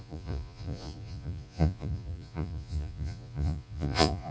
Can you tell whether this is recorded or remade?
remade